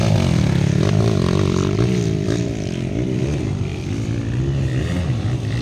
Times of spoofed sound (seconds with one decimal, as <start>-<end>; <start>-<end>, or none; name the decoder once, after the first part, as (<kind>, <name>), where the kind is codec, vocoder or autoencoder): none